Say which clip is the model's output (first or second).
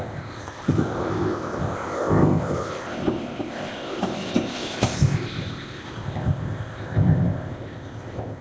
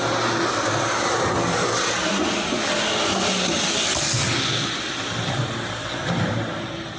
first